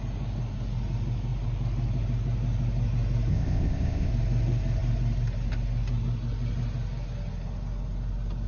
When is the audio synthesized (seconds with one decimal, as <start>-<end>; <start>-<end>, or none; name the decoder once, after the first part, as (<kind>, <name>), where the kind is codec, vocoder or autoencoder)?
3.3-4.1 (codec, ZipCodec)